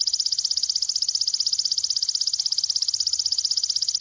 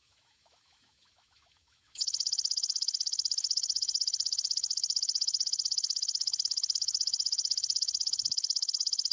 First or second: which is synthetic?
second